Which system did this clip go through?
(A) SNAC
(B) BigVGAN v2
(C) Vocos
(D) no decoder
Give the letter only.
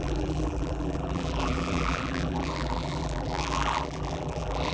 B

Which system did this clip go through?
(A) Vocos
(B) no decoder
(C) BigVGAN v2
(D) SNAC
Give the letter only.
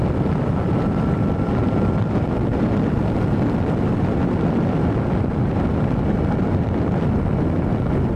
C